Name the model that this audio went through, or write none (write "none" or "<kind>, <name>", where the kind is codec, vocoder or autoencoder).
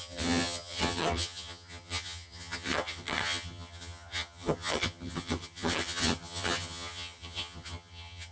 vocoder, HiFi-GAN